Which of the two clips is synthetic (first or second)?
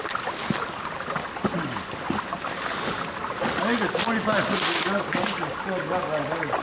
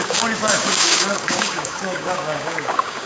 second